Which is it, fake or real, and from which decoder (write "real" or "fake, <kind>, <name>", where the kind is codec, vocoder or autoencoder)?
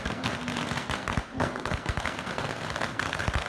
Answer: fake, codec, SNAC